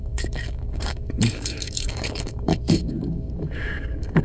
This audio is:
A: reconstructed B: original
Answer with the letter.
A